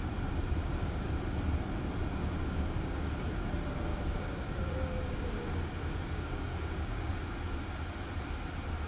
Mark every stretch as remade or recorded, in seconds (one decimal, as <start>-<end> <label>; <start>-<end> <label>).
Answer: 0.0-0.6 recorded; 0.6-1.1 remade; 1.1-2.0 recorded; 2.0-3.1 remade; 3.1-3.9 recorded; 3.9-7.1 remade; 7.1-8.9 recorded